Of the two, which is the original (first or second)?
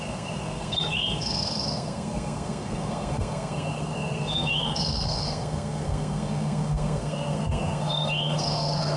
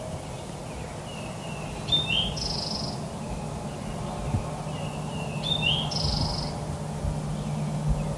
second